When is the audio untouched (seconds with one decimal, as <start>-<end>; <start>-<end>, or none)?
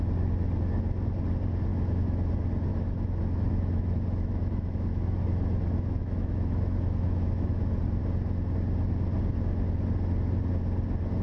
0.0-1.7; 2.3-2.7; 7.8-11.2